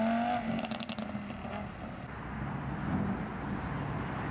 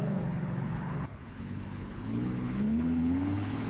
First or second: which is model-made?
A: second